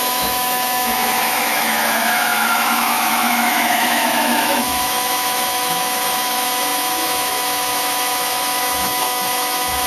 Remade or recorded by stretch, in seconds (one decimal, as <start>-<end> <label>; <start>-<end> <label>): 0.0-9.9 remade